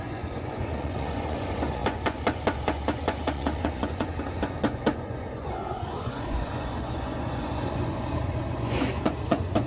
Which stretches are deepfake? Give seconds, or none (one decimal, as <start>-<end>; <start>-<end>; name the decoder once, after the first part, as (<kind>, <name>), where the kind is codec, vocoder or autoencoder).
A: 0.0-9.7 (vocoder, Vocos)